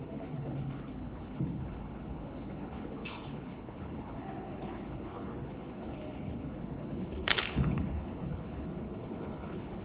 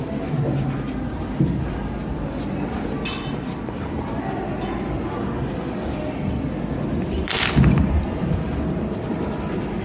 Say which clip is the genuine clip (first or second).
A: second